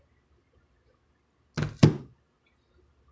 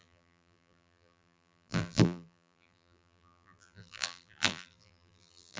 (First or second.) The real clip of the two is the first